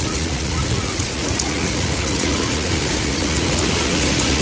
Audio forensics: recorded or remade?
remade